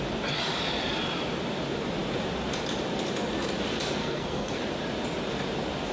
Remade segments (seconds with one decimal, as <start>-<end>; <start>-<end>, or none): 4.0-4.6